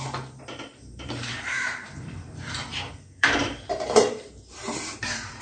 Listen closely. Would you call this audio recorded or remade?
remade